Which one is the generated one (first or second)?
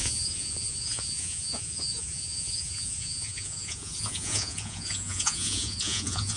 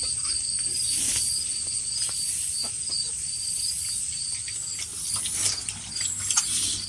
first